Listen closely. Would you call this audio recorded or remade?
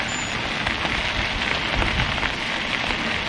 recorded